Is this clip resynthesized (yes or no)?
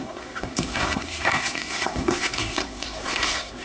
yes